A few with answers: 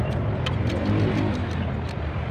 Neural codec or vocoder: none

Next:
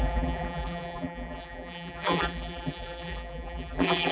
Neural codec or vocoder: vocoder, BigVGAN v2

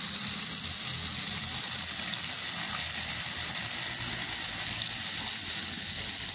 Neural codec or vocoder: none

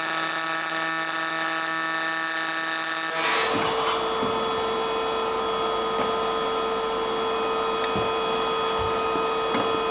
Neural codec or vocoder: none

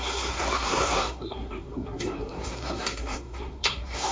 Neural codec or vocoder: codec, SNAC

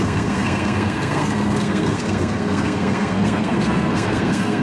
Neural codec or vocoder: codec, SNAC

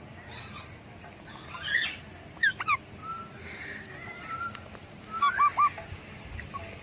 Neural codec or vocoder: none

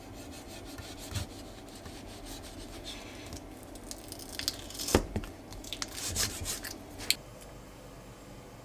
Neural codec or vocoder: none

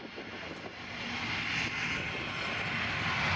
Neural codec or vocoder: none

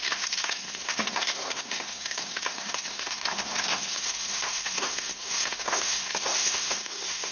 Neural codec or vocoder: codec, SNAC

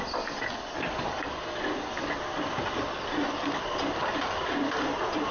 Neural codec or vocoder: none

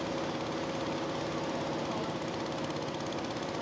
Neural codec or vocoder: none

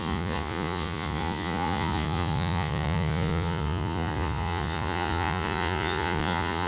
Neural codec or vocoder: vocoder, Vocos